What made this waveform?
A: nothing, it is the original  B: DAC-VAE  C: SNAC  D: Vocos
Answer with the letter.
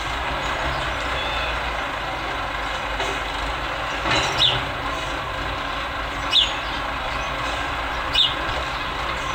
A